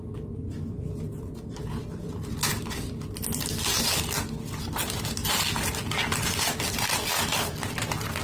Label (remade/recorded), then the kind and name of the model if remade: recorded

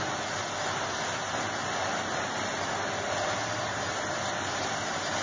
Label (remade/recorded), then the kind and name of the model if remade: recorded